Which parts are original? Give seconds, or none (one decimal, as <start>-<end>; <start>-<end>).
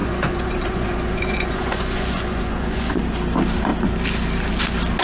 3.0-5.0